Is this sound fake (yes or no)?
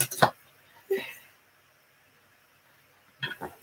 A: no